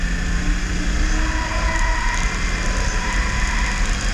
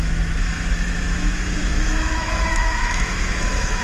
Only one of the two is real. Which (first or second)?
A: first